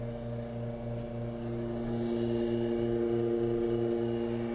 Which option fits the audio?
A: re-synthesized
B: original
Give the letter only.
B